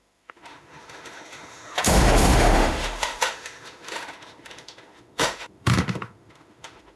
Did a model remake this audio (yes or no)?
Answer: yes